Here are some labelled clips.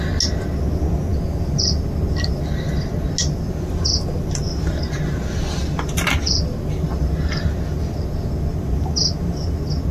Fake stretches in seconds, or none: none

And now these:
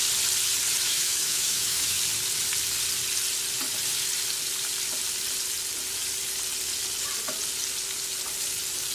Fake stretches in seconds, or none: 0.9-2.0 (autoencoder, DAC-VAE)

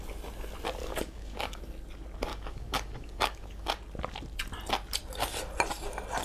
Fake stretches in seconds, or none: 0.8-1.6 (codec, DAC); 2.3-3.7

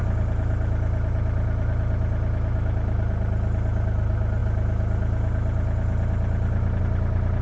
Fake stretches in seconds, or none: none

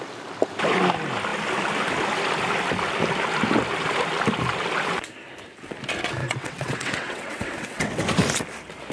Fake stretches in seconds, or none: 6.2-8.0 (vocoder, WaveNeXt)

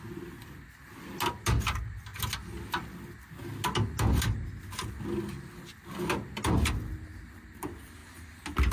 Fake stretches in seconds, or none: none

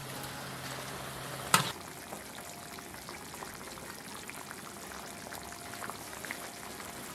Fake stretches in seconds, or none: none